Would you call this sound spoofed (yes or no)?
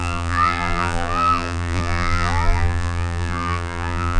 yes